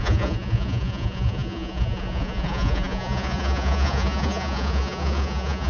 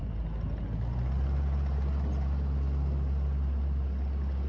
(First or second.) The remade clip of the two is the first